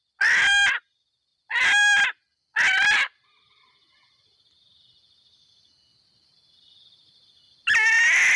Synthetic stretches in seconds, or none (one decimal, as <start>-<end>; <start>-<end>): none